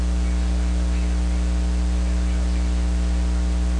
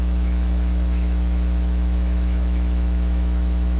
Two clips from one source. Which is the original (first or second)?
first